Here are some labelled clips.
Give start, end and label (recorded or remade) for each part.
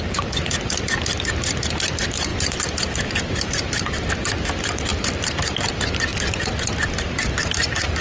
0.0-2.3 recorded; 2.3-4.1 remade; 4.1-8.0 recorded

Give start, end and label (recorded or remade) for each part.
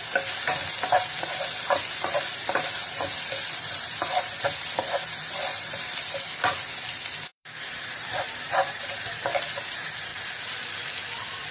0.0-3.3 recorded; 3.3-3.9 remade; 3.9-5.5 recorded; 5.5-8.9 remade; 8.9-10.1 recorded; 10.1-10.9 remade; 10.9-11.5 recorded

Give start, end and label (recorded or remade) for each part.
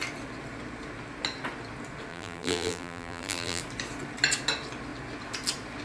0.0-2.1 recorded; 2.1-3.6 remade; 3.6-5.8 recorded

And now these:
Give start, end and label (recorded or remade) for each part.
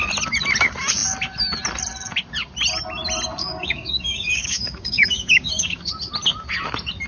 0.0-3.4 recorded; 3.4-5.9 remade; 5.9-7.1 recorded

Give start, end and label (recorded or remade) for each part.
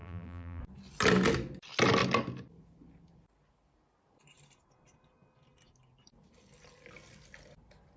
0.0-0.6 remade; 0.6-8.0 recorded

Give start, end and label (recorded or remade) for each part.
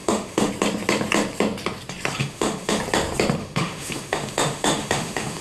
0.0-0.5 remade; 0.5-2.2 recorded; 2.2-2.8 remade; 2.8-3.4 recorded; 3.4-5.4 remade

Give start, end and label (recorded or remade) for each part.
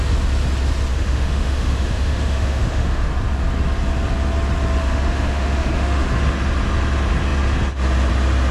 0.0-0.9 recorded; 0.9-3.1 remade; 3.1-4.8 recorded; 4.8-6.1 remade; 6.1-8.5 recorded